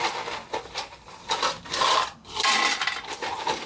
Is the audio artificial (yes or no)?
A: yes